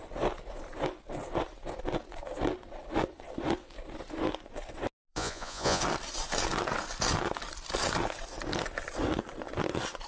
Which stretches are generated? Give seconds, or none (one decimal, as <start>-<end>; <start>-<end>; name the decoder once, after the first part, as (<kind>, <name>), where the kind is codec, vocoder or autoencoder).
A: 5.1-5.8 (vocoder, Vocos)